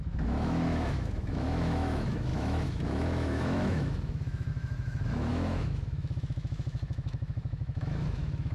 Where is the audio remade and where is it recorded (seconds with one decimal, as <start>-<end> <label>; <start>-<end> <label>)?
0.0-8.5 remade